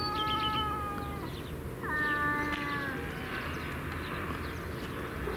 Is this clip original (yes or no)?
yes